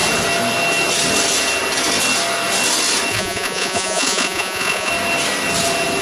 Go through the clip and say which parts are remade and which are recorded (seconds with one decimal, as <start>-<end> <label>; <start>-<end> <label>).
0.0-3.1 recorded; 3.1-4.9 remade; 4.9-6.0 recorded